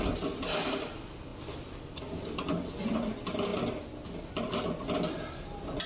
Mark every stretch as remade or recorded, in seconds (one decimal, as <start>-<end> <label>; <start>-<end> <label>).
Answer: 0.0-5.9 recorded